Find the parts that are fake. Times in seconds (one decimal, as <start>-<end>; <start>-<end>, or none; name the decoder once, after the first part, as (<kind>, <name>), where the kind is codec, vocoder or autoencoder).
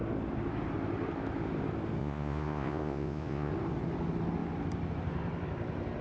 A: 2.0-3.5 (vocoder, Vocos)